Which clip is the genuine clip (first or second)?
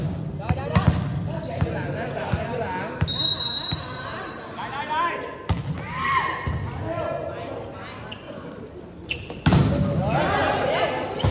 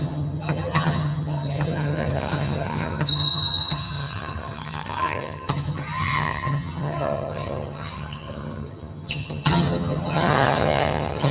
first